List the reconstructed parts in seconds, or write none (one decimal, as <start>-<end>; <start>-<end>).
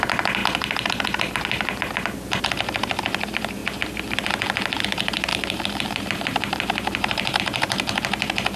5.3-7.4